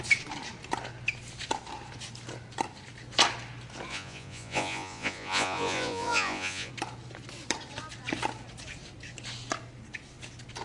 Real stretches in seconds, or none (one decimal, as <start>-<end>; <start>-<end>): 0.0-3.9; 6.7-10.6